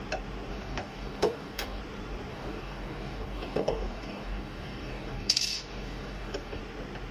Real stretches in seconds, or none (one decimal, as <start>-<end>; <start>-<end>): 0.0-0.5; 1.8-2.3; 6.6-7.1